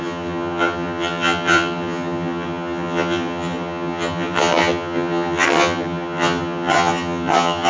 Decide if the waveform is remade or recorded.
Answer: remade